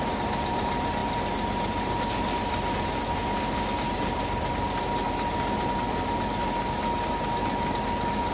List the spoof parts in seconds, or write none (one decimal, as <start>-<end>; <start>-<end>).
none